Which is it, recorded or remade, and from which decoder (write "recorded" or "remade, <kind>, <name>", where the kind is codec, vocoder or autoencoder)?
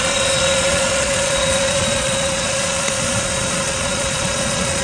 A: remade, vocoder, Vocos